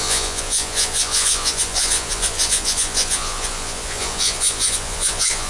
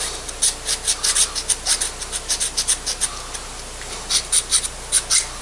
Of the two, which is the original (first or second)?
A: second